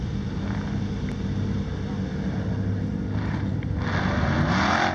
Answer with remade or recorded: recorded